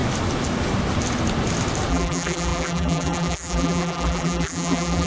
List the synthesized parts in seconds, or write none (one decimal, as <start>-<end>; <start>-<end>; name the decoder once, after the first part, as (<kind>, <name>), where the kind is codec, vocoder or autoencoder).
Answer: 1.9-5.1 (vocoder, BigVGAN v2)